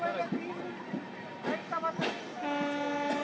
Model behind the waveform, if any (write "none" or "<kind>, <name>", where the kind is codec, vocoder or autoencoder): none